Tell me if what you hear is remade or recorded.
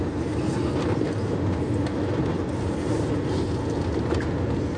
recorded